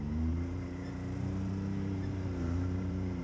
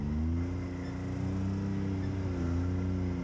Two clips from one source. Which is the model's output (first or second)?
first